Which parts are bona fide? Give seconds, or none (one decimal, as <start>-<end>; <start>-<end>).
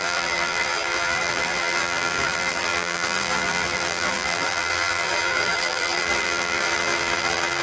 none